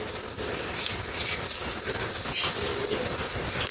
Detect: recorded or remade recorded